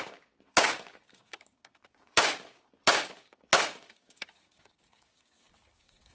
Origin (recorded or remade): remade